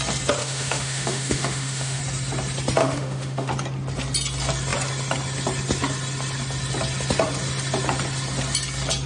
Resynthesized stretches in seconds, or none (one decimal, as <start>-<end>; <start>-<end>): 0.4-2.0; 2.8-3.5